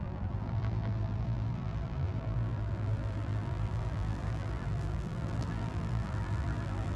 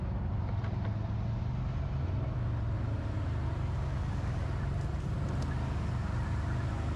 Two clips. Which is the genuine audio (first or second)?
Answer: second